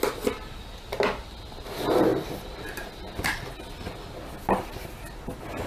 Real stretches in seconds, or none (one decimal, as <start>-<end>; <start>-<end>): 0.0-5.7